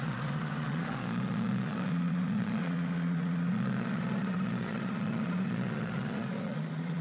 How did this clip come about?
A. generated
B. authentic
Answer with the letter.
A